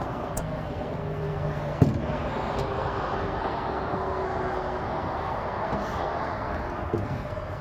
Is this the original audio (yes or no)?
no